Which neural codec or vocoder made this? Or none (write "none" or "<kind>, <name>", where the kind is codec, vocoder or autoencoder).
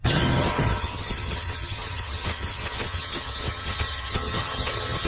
vocoder, HiFi-GAN